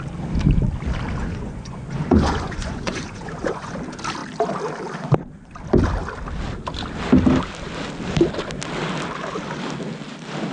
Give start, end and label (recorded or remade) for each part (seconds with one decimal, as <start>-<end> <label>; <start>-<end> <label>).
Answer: 0.0-1.2 recorded; 1.2-3.7 remade; 3.7-10.5 recorded